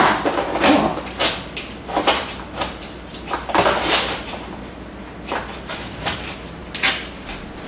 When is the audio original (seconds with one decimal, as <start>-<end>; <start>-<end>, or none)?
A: 0.0-7.7